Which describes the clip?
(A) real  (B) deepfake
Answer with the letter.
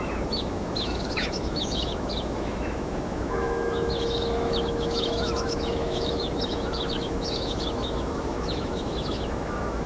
B